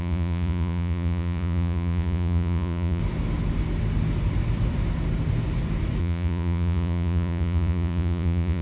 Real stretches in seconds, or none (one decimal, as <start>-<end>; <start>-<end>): 3.0-6.0